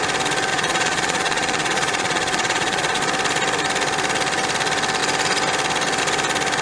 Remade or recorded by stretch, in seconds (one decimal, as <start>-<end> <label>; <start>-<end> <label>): 0.0-0.5 recorded; 0.5-3.0 remade; 3.0-6.6 recorded